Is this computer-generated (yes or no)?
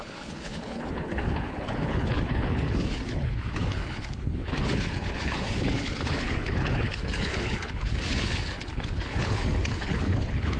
yes